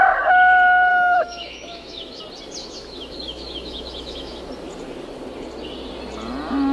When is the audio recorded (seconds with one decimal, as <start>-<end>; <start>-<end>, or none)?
0.0-0.9; 2.2-2.6; 4.4-6.7